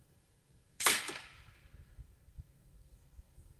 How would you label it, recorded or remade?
remade